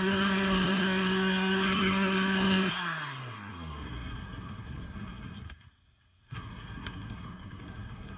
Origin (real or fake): fake